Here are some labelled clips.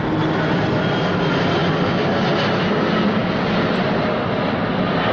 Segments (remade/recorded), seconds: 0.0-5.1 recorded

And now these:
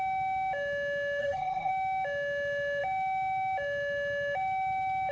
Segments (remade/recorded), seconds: 0.0-1.2 recorded; 1.2-1.7 remade; 1.7-5.1 recorded